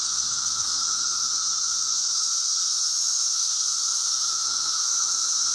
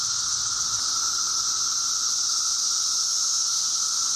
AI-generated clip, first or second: first